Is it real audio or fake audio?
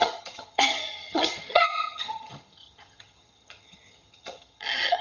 fake